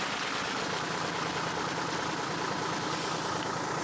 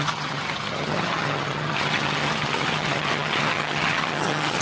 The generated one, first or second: second